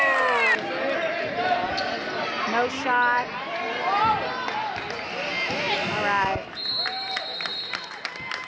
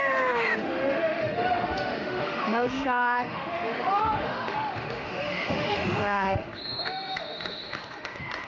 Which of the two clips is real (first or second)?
first